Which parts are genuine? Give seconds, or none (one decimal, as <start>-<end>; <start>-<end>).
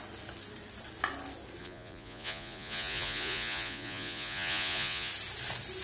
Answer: 0.0-1.6; 5.1-5.8